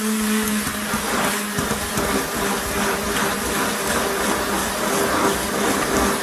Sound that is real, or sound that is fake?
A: real